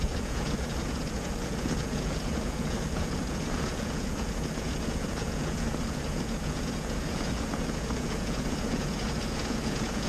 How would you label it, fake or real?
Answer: fake